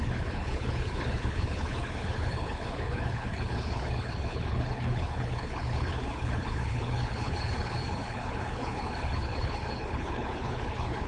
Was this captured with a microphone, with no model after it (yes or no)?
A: no